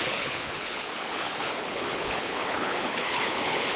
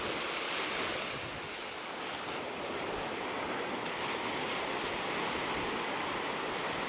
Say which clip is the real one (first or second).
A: second